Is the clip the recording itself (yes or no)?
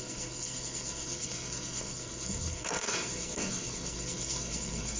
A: no